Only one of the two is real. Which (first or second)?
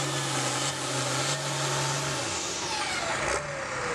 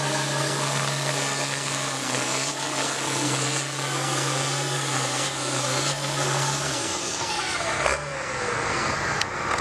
first